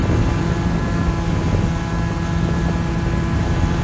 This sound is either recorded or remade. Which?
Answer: recorded